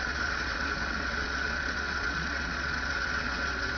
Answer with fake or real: fake